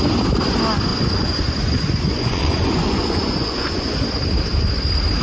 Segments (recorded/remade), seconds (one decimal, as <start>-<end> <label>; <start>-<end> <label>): 0.0-0.9 recorded; 0.9-4.0 remade; 4.0-5.2 recorded